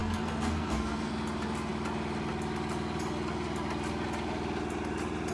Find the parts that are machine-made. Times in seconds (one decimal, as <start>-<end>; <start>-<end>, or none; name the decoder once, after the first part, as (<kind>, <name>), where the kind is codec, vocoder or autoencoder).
0.0-1.1 (codec, SNAC)